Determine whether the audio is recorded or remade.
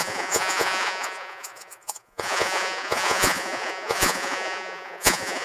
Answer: remade